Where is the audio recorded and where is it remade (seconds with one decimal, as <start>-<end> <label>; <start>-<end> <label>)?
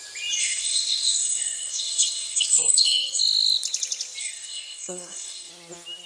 0.0-0.4 recorded; 0.4-3.2 remade; 3.2-4.2 recorded; 4.2-5.5 remade; 5.5-6.1 recorded